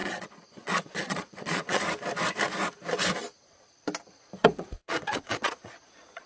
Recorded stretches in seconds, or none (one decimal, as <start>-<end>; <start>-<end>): 1.8-4.4